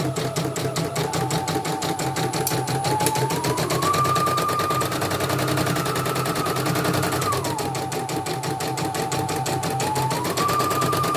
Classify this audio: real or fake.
real